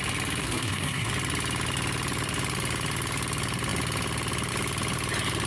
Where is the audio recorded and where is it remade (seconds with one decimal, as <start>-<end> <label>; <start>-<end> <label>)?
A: 0.0-0.4 recorded; 0.4-1.1 remade; 1.1-5.5 recorded